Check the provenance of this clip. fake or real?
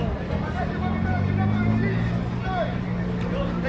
real